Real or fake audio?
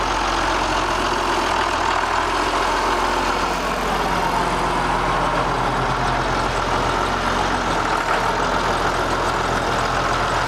real